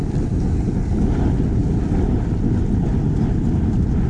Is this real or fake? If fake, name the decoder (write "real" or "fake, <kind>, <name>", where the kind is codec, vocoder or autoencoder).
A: real